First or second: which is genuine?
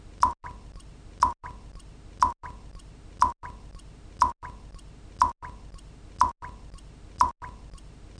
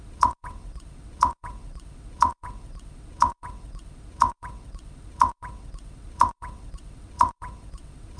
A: first